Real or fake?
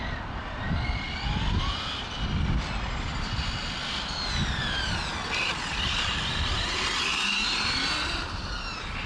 real